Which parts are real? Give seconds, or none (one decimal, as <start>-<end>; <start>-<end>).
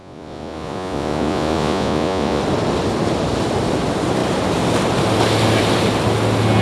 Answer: 2.4-6.6